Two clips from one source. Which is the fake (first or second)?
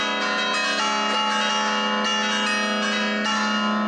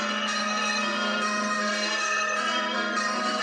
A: second